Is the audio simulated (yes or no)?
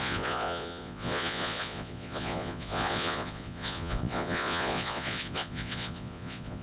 yes